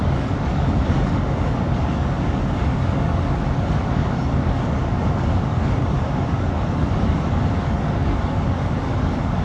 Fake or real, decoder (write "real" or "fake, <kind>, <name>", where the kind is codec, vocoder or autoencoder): fake, codec, DAC